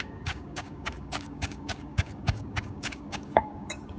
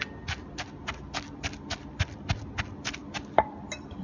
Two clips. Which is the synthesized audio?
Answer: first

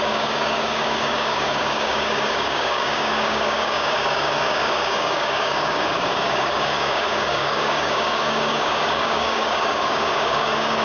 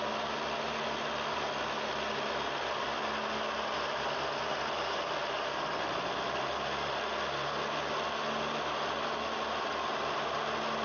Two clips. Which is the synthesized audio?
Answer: first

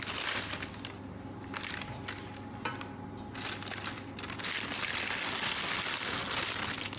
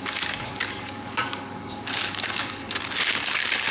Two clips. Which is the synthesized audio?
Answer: second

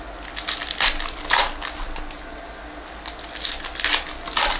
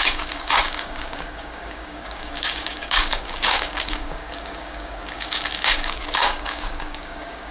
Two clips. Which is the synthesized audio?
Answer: second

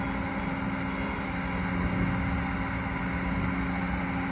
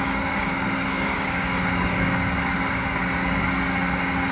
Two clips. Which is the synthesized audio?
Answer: second